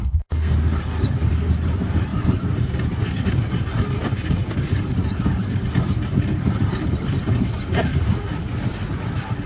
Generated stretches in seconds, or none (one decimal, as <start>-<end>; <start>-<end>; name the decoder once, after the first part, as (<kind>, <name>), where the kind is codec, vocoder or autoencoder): 0.0-0.5 (codec, SNAC)